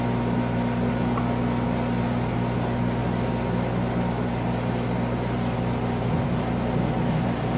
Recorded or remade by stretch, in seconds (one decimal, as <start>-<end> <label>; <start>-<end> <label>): 0.0-7.6 recorded